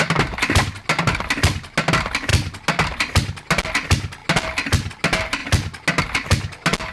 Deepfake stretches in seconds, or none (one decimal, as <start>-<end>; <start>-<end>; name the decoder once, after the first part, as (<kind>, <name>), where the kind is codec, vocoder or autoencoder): none